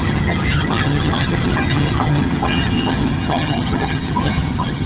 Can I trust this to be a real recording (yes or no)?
no